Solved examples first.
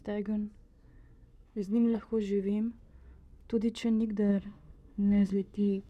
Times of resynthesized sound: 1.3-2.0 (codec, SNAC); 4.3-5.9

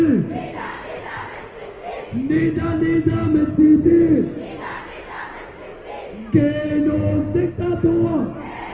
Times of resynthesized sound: 1.4-1.9 (autoencoder, DAC-VAE)

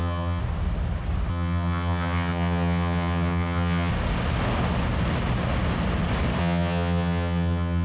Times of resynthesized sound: 0.0-0.4 (vocoder, HiFi-GAN); 1.3-3.9; 6.4-7.8

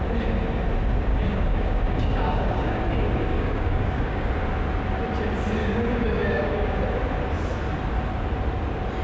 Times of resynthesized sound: 1.1-2.8 (codec, DAC); 3.3-4.3; 5.6-6.8

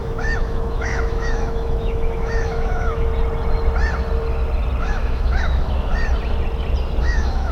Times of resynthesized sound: 0.0-3.1 (autoencoder, DAC-VAE); 4.8-5.9; 7.0-7.5